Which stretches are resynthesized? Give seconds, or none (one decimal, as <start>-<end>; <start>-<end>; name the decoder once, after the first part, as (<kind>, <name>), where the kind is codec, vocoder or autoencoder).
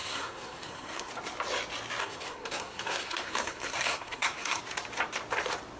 0.0-1.1 (codec, SNAC); 2.0-4.6